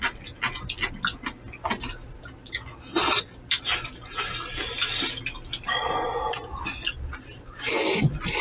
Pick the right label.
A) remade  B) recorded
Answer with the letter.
B